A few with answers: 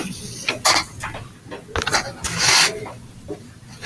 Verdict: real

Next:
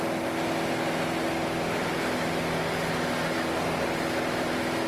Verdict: real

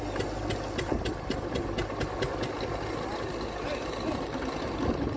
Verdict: real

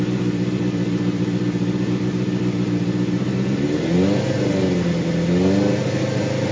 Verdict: real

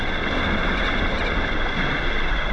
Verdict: real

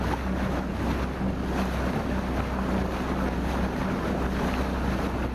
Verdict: real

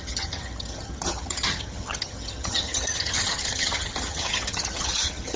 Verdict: fake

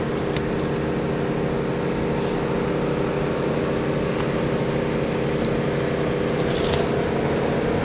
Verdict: real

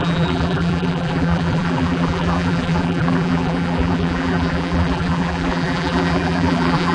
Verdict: fake